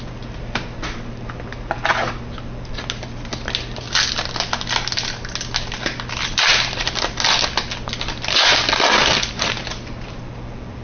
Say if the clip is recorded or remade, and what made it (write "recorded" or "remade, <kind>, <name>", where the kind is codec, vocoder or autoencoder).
recorded